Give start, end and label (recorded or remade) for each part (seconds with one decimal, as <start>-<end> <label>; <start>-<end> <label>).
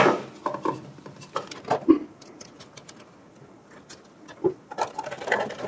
0.0-5.7 recorded